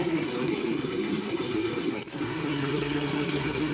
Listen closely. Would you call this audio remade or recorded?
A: remade